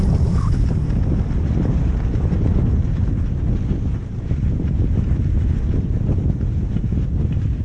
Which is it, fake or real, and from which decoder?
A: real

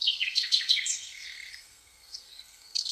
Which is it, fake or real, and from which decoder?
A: fake, codec, SNAC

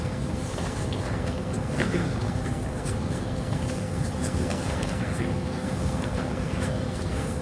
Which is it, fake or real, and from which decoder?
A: fake, codec, SNAC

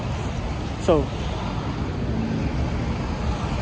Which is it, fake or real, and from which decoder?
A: real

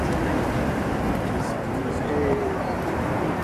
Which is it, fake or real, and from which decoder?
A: real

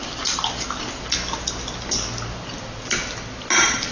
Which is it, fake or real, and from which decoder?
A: real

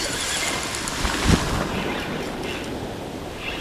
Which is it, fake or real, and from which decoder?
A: real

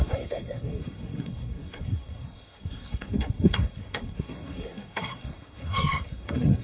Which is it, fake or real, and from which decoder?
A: fake, codec, SNAC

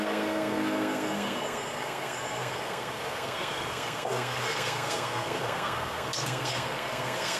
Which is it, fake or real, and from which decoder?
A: fake, codec, SNAC